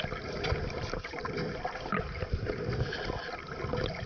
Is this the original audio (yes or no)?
yes